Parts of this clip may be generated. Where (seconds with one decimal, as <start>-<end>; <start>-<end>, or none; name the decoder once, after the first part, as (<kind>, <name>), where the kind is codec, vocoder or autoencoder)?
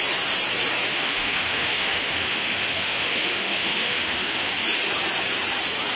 0.9-4.5 (autoencoder, DAC-VAE)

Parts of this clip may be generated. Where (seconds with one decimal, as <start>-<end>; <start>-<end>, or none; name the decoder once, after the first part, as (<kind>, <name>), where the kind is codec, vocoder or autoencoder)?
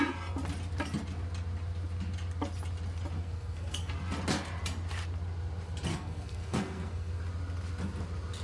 3.2-3.9 (codec, SNAC); 5.9-7.2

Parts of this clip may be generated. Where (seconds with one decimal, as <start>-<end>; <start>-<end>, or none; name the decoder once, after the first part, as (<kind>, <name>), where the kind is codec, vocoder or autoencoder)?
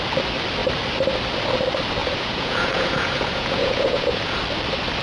2.0-4.4 (vocoder, Vocos)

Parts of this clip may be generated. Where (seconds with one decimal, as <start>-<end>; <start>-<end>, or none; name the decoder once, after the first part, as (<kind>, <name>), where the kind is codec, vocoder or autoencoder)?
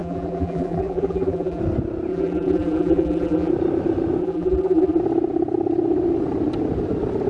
0.0-1.6 (vocoder, BigVGAN v2); 2.1-3.5; 4.2-5.0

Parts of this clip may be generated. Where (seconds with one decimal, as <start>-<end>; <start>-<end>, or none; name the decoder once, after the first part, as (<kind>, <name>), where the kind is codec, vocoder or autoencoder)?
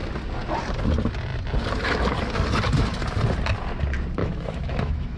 4.2-5.2 (autoencoder, DAC-VAE)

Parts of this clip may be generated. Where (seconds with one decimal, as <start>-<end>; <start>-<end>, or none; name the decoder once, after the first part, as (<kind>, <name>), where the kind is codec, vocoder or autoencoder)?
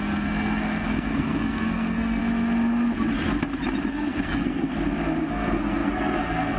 0.0-2.2 (codec, SNAC); 3.9-4.7; 5.2-6.6